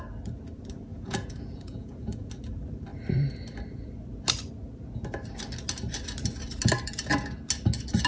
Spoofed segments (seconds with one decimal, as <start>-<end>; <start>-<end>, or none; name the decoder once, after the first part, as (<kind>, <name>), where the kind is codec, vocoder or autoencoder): 0.9-2.3 (vocoder, Vocos)